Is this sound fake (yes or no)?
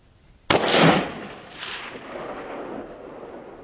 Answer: no